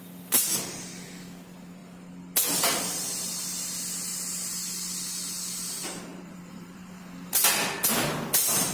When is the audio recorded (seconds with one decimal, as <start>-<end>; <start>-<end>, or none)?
0.0-6.1; 7.1-8.7